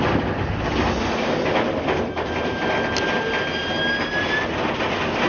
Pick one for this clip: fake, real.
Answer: real